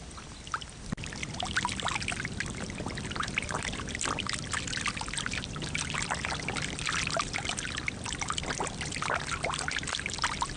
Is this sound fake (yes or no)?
no